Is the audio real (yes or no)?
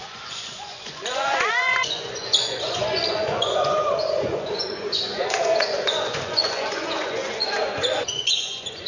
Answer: no